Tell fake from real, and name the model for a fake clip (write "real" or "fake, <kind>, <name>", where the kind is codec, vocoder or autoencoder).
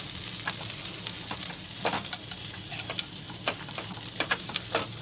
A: real